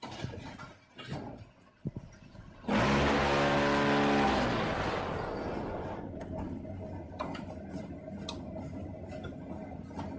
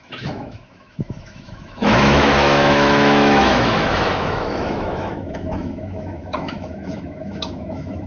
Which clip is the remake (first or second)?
second